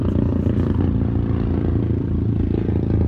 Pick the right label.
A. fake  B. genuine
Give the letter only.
B